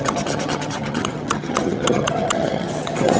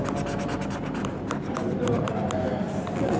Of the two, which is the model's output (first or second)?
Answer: first